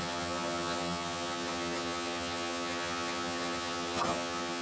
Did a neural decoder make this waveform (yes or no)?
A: yes